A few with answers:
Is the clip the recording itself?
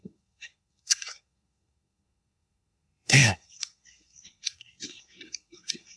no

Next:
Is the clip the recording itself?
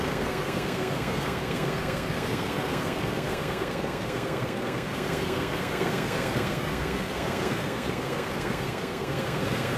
no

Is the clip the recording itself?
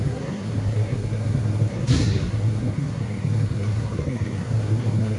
no